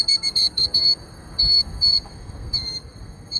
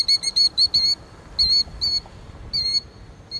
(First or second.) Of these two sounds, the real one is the second